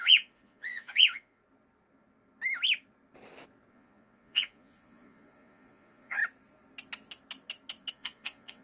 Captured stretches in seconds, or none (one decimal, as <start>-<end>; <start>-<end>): 1.4-3.7; 6.2-7.9

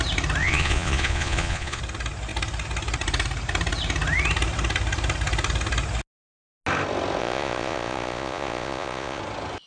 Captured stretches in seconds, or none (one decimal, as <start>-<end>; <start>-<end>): 0.0-0.4; 1.8-7.2; 9.2-9.7

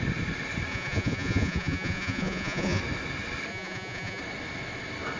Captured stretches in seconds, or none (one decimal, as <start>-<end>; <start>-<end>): 0.0-0.7; 2.8-3.5; 4.2-5.2

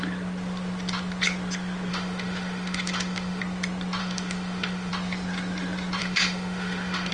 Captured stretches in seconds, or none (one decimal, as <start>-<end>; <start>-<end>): 0.0-1.9; 3.4-4.0; 4.9-6.0

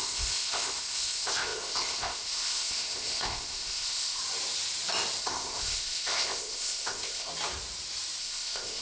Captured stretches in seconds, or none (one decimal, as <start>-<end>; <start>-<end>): 4.2-5.2; 7.3-8.2